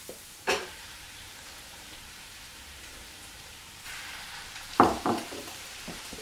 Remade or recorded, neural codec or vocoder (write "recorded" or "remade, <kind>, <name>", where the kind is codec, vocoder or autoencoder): remade, vocoder, BigVGAN v2